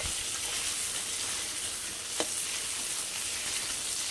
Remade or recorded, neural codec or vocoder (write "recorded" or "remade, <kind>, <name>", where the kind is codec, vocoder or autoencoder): recorded